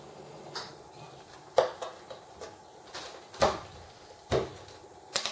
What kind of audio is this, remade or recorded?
recorded